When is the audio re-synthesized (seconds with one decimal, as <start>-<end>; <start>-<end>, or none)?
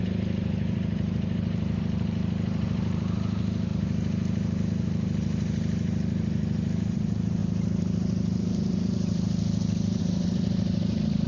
0.0-11.3